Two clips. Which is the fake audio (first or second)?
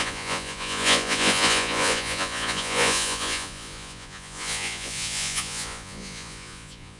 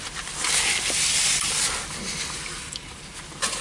first